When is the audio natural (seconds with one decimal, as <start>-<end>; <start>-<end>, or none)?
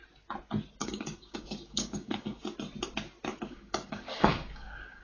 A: 0.0-0.8; 2.4-3.3